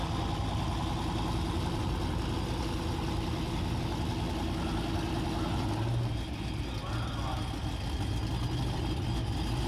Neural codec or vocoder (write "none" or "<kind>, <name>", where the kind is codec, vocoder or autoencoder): none